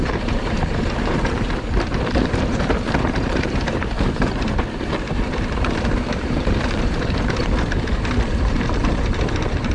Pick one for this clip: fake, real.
fake